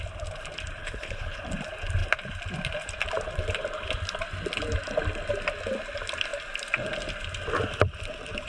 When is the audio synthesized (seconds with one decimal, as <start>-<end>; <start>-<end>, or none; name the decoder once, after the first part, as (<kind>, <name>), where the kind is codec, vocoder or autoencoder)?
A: 0.8-1.4 (codec, HILCodec)